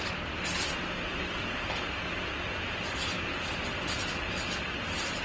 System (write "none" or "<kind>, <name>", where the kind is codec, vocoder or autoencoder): none